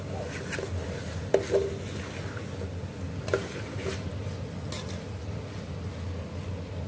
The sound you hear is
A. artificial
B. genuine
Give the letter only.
B